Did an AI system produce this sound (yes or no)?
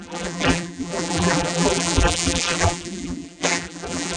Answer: yes